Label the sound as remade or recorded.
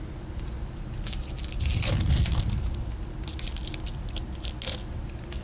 recorded